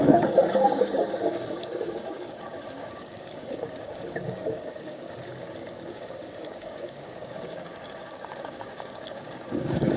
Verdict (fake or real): fake